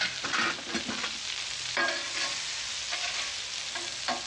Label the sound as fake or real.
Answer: real